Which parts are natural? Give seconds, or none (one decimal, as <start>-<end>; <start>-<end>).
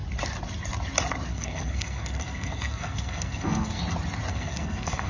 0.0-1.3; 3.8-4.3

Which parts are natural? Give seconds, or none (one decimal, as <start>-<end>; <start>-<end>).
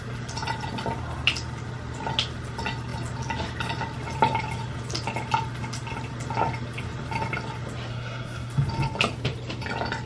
0.0-7.9; 8.5-10.1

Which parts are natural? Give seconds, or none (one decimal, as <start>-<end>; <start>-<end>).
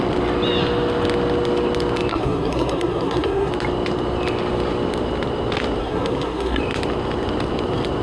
0.0-2.1; 3.5-5.8; 6.6-8.0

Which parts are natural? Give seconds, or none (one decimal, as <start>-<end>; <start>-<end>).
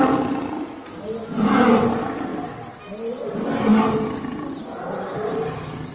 0.0-5.9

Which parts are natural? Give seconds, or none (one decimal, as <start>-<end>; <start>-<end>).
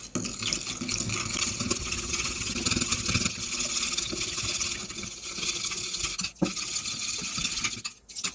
0.0-8.3